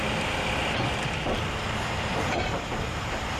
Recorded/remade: recorded